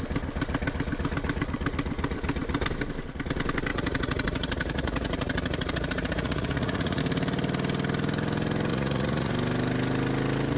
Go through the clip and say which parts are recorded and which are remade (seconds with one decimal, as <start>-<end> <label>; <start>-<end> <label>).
0.0-3.7 recorded; 3.7-7.0 remade; 7.0-8.7 recorded; 8.7-9.3 remade; 9.3-10.6 recorded